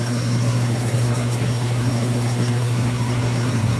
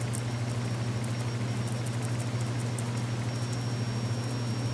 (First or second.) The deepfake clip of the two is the first